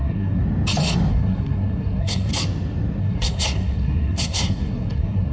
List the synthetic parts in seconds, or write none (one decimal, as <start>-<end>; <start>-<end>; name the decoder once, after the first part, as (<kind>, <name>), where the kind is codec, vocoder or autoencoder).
0.0-0.4 (codec, SNAC); 1.1-2.3; 3.0-5.3